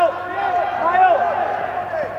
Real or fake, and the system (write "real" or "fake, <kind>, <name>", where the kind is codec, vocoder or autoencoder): real